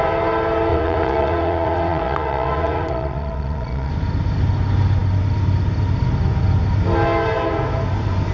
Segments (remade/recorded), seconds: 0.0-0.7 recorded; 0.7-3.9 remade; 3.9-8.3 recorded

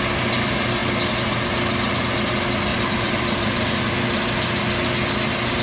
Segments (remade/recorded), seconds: 0.0-2.7 recorded; 2.7-3.9 remade; 3.9-5.6 recorded